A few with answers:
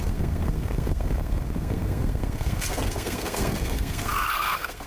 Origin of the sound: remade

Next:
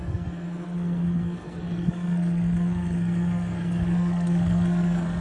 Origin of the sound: remade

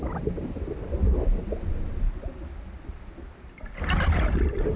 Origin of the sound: recorded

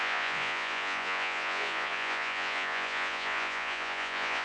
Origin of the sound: remade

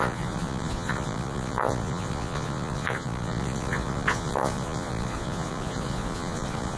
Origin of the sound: remade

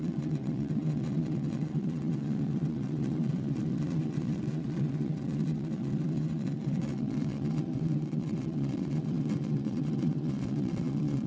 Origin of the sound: remade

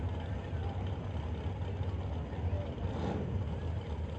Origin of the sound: recorded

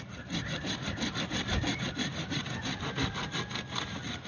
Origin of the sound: recorded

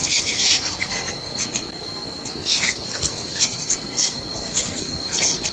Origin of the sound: remade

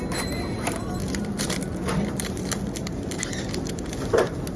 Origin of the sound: recorded